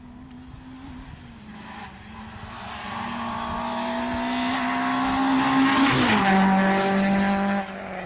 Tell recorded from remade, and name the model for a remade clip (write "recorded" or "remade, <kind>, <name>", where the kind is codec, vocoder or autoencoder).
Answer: recorded